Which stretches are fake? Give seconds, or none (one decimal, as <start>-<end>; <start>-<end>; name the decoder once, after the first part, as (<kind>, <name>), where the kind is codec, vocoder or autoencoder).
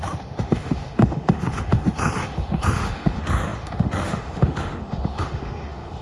0.0-6.0 (autoencoder, DAC-VAE)